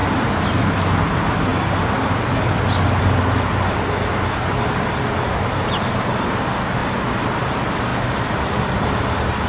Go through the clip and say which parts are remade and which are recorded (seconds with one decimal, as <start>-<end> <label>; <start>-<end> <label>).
0.0-0.6 remade; 0.6-7.9 recorded; 7.9-8.8 remade; 8.8-9.5 recorded